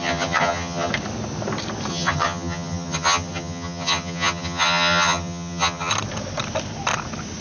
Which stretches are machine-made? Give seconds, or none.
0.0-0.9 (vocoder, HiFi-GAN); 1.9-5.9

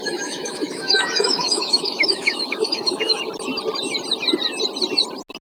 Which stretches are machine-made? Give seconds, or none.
0.0-3.2 (autoencoder, DAC-VAE)

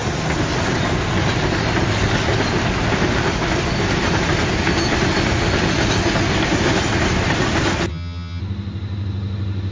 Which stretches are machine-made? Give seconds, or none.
7.9-8.4 (vocoder, HiFi-GAN)

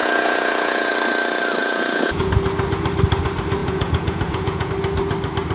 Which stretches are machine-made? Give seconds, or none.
0.0-0.9 (vocoder, Vocos); 1.6-2.3; 3.6-4.7

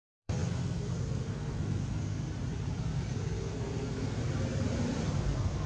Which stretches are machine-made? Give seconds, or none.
0.0-2.3 (codec, SNAC); 2.8-4.2; 5.0-5.7

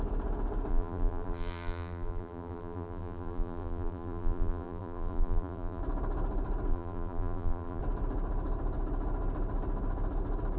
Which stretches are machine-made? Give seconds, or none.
0.7-5.8 (vocoder, BigVGAN v2); 6.7-7.8